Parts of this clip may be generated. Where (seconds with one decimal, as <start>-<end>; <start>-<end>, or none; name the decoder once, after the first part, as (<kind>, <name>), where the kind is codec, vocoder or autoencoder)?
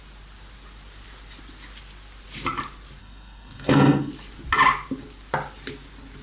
3.0-4.1 (codec, SNAC)